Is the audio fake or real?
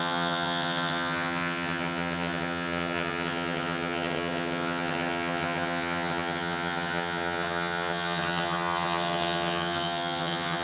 fake